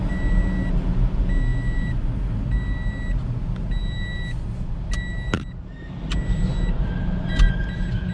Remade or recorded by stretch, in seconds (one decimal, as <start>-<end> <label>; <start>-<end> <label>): 0.0-8.1 recorded